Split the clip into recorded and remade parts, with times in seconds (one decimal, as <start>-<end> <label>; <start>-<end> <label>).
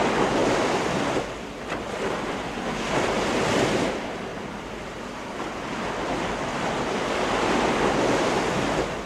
0.0-6.5 recorded; 6.5-9.1 remade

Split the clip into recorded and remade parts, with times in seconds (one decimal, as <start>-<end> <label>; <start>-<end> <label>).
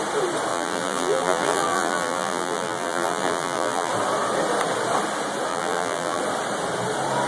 0.0-0.5 recorded; 0.5-3.9 remade; 3.9-5.5 recorded; 5.5-6.2 remade; 6.2-7.3 recorded